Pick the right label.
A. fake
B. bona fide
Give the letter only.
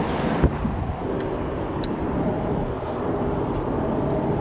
B